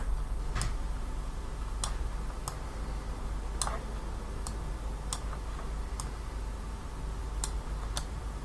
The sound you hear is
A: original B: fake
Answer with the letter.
A